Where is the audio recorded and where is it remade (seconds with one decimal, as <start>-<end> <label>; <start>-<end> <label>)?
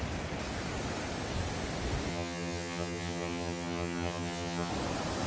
0.0-2.1 recorded; 2.1-4.7 remade; 4.7-5.3 recorded